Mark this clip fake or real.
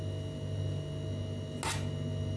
real